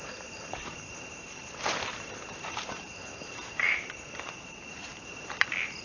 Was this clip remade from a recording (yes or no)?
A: yes